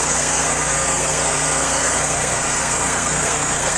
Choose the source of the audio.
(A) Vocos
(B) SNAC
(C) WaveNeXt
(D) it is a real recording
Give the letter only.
B